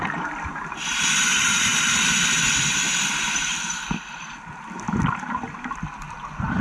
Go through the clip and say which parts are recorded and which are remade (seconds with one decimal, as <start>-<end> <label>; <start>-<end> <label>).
0.0-6.6 recorded